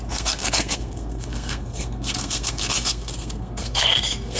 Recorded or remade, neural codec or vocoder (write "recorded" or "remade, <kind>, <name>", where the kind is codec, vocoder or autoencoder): remade, codec, SNAC